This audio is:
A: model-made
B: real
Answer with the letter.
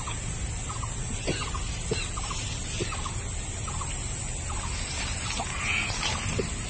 B